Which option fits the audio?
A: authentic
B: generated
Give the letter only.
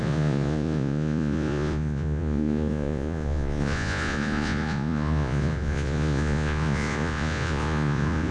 B